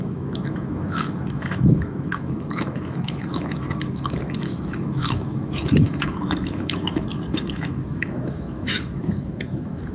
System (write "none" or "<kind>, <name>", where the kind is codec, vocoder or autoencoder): autoencoder, DAC-VAE